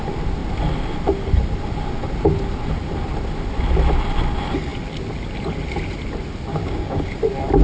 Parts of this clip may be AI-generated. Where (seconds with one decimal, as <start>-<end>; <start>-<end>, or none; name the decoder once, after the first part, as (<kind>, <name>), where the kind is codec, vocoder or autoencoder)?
6.6-7.1 (codec, DAC)